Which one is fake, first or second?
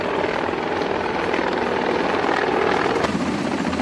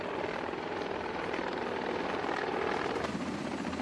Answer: second